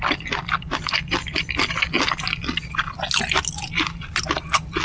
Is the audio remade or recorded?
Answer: recorded